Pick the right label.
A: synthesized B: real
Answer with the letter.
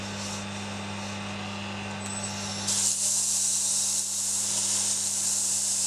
B